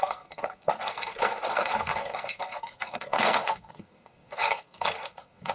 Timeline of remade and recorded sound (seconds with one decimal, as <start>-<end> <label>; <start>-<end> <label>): 0.0-5.5 remade